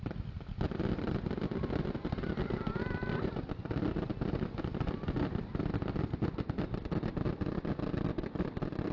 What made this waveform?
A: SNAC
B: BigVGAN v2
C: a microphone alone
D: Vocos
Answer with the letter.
C